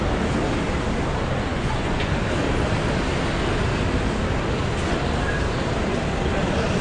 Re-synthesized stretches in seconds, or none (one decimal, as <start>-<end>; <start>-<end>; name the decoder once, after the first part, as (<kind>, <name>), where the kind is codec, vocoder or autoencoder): 1.5-2.1 (vocoder, Vocos)